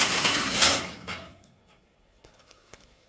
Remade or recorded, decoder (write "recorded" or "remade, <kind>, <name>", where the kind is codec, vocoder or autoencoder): remade, codec, SNAC